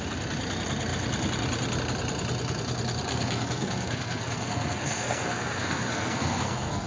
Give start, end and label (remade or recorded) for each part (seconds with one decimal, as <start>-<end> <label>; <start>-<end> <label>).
0.0-3.1 recorded; 3.1-6.9 remade